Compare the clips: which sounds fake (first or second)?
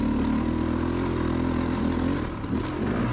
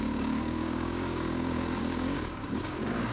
second